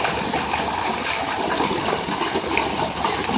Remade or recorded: remade